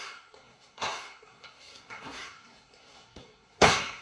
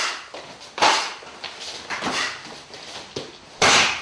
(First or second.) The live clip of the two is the second